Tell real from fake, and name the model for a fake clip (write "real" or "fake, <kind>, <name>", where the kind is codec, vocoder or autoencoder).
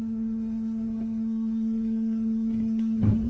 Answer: fake, codec, SNAC